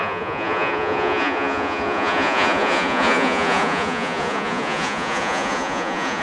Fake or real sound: fake